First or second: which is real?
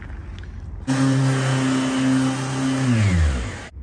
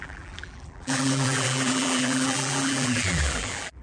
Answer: first